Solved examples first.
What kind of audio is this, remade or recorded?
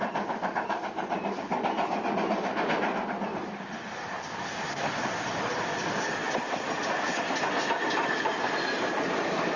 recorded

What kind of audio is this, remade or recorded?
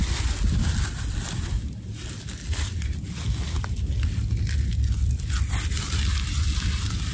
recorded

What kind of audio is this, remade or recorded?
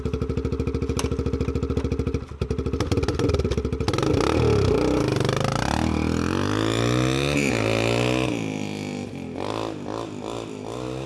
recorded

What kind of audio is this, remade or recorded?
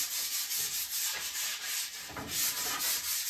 remade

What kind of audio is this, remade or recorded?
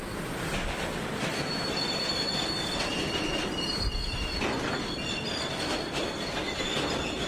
remade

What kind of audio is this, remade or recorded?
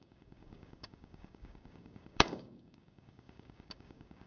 remade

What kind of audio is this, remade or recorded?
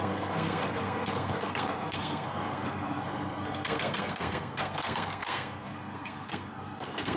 remade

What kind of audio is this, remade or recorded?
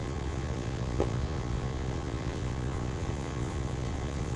remade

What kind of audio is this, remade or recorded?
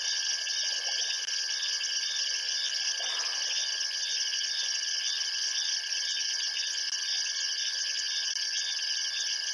recorded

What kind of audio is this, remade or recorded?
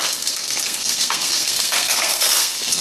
remade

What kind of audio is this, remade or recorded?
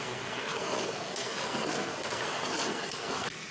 remade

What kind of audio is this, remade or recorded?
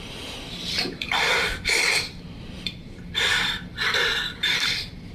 remade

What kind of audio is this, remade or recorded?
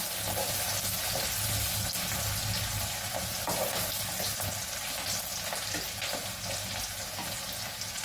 recorded